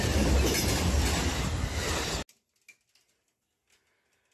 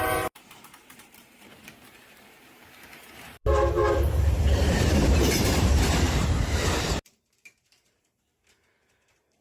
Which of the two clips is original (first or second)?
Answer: first